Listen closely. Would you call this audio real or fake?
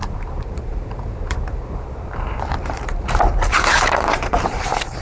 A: fake